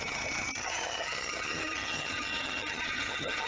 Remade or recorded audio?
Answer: remade